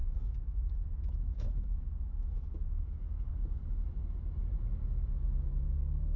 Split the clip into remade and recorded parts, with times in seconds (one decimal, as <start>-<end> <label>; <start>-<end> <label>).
0.0-3.3 remade; 3.3-6.2 recorded